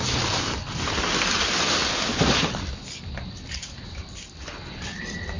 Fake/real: real